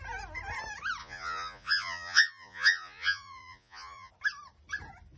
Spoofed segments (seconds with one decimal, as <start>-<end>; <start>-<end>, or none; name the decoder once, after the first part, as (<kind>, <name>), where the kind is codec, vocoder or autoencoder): 1.0-4.1 (vocoder, Vocos)